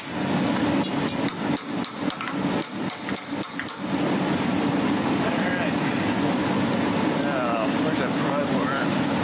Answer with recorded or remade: remade